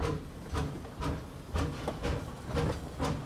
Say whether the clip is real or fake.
real